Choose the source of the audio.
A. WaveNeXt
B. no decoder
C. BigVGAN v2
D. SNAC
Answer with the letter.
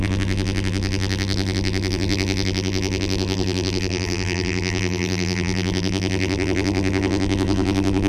C